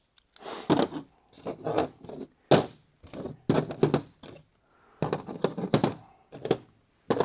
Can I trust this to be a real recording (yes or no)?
yes